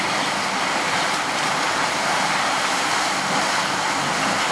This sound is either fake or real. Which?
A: real